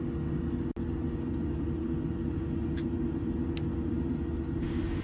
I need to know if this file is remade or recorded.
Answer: recorded